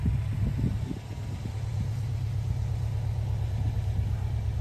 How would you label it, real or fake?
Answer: real